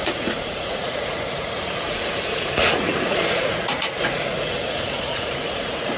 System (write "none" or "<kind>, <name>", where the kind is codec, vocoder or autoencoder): vocoder, Vocos